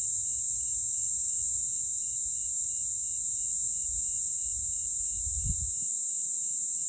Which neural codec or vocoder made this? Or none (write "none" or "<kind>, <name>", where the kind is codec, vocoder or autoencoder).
vocoder, BigVGAN v2